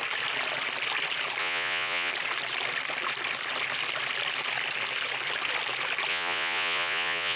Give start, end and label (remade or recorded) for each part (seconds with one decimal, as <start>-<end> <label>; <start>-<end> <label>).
0.0-1.4 recorded; 1.4-2.1 remade; 2.1-6.1 recorded; 6.1-7.4 remade